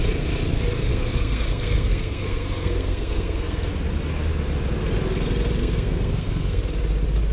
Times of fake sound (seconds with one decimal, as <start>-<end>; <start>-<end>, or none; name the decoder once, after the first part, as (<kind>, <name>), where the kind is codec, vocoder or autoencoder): 0.9-3.7 (codec, SNAC); 5.6-6.6